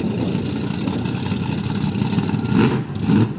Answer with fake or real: real